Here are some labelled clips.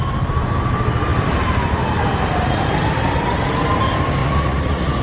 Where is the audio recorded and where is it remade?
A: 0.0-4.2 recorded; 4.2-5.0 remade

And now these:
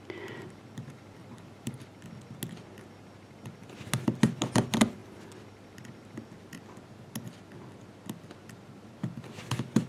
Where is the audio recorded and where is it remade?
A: 0.0-1.2 recorded; 1.2-1.7 remade; 1.7-9.9 recorded

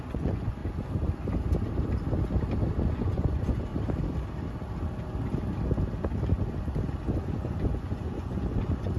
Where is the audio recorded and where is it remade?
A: 0.0-0.6 remade; 0.6-2.9 recorded; 2.9-3.7 remade; 3.7-7.2 recorded; 7.2-9.0 remade

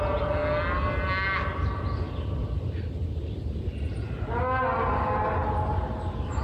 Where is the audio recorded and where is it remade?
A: 0.0-6.4 recorded

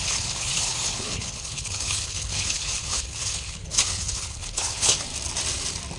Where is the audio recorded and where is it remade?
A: 0.0-5.1 remade; 5.1-6.0 recorded